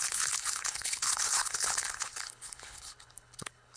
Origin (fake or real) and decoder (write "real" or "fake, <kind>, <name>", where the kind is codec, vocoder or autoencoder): fake, codec, HILCodec